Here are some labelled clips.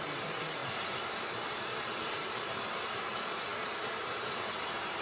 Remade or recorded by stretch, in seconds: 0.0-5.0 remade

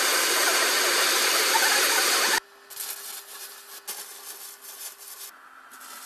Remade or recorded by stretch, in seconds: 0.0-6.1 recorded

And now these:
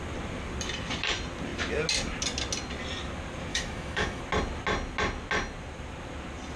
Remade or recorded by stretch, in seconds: 0.0-3.5 recorded; 3.5-4.2 remade; 4.2-6.6 recorded